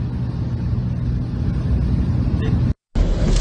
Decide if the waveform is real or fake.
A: real